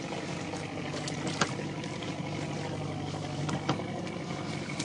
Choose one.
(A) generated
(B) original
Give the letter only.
B